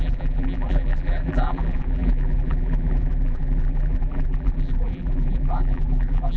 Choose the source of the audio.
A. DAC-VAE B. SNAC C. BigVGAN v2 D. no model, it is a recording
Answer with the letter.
C